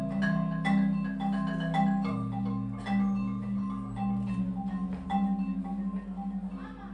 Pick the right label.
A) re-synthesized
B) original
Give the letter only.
B